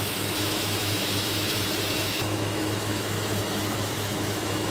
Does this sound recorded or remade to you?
remade